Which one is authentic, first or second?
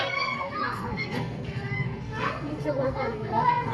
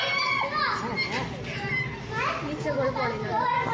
second